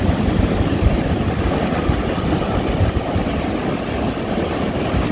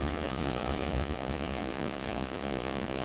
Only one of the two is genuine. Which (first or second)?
first